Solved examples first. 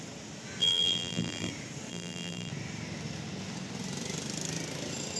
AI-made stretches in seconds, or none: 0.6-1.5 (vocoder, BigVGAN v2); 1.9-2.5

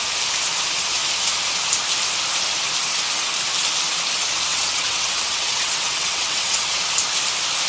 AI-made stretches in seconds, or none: 4.5-6.8 (vocoder, WaveNeXt)

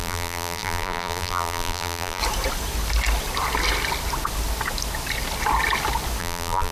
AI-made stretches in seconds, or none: 0.0-2.2 (vocoder, BigVGAN v2); 6.2-6.7

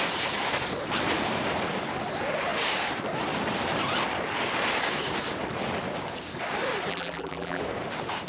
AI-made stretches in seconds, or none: 6.9-7.6 (vocoder, BigVGAN v2)

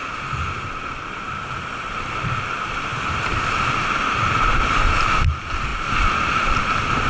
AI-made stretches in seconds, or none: 0.0-7.1 (vocoder, BigVGAN v2)

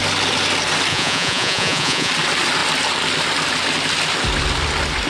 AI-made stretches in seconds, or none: 0.9-2.1 (vocoder, Vocos)

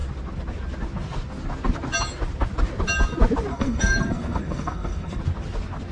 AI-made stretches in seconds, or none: 3.5-5.2 (codec, SNAC)

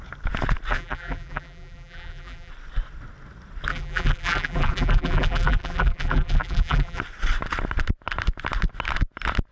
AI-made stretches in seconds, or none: 0.7-2.5 (vocoder, BigVGAN v2); 3.7-7.0